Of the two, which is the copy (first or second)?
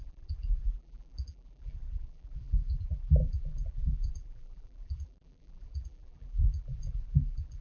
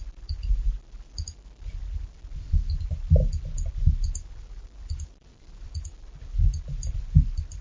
first